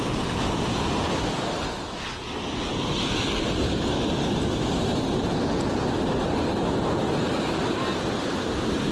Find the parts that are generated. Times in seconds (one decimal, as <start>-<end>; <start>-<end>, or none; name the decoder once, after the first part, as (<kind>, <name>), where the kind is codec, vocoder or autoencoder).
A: 2.7-3.2 (vocoder, Vocos)